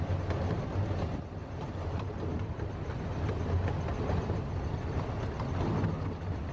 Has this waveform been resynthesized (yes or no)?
no